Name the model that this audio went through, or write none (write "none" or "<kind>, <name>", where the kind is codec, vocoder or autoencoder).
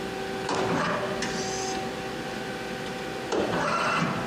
none